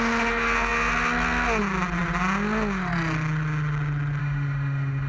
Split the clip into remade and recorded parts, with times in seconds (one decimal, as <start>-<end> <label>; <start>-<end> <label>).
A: 0.0-4.2 recorded; 4.2-5.1 remade